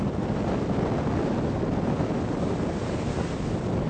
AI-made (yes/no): no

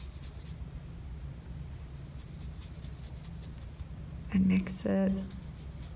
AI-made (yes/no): no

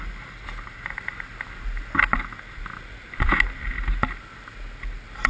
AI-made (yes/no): no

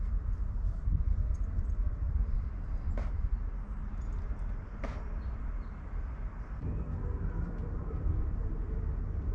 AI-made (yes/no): no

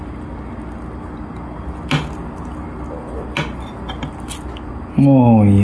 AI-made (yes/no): no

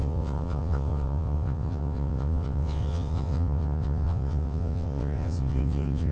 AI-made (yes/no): yes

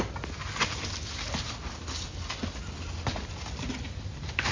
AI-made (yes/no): no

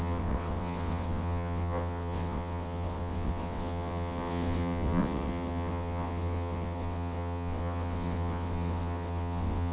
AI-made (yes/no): yes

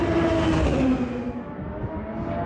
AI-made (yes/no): no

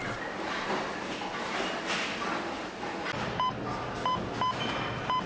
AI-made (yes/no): no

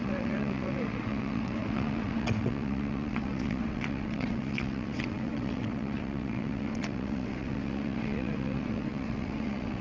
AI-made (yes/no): yes